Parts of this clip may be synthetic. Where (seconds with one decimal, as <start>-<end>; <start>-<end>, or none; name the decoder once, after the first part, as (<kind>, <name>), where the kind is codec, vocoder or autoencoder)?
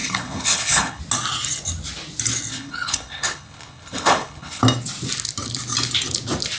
0.0-1.0 (codec, HILCodec); 2.5-4.6